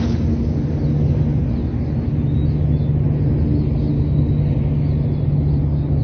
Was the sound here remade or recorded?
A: recorded